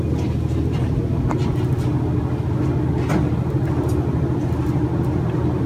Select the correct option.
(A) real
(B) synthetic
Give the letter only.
A